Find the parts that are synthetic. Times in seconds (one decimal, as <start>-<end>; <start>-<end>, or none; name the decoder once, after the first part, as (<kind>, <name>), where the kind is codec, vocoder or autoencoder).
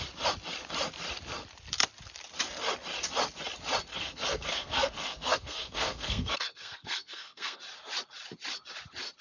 3.9-7.6 (codec, SNAC)